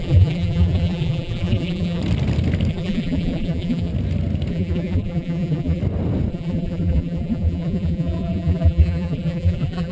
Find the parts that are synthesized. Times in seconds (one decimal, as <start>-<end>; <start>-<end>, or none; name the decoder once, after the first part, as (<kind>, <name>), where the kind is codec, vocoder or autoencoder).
0.0-2.0 (vocoder, BigVGAN v2); 2.7-3.9; 4.5-5.8; 6.3-9.9